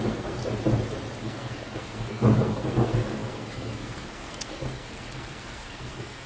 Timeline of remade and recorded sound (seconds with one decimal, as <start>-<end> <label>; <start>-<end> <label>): 0.0-0.4 remade; 0.4-1.2 recorded; 1.2-6.3 remade